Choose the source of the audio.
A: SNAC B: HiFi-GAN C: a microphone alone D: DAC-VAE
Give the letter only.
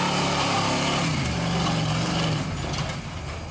C